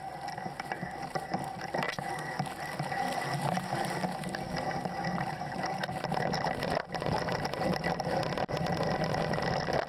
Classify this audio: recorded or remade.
recorded